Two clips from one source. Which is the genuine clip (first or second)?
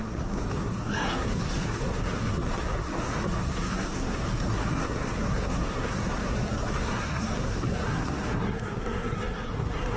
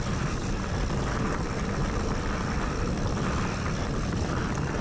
second